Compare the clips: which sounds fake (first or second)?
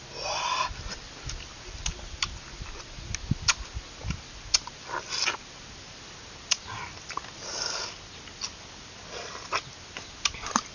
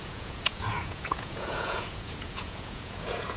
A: second